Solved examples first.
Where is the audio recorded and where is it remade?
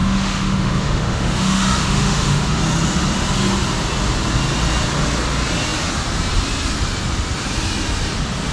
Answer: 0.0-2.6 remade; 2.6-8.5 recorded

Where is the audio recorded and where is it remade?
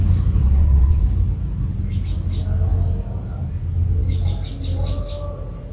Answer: 0.0-0.4 recorded; 0.4-1.0 remade; 1.0-5.7 recorded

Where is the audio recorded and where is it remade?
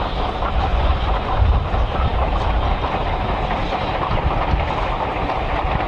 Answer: 0.0-0.7 recorded; 0.7-1.5 remade; 1.5-5.9 recorded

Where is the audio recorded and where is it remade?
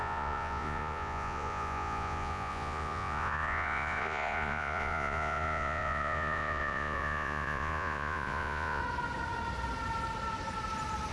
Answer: 0.0-8.8 remade; 8.8-11.1 recorded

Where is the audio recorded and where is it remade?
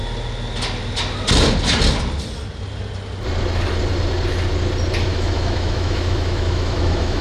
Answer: 0.0-5.1 recorded; 5.1-7.2 remade